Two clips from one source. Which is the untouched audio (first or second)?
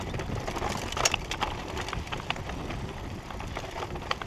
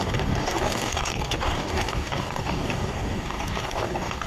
first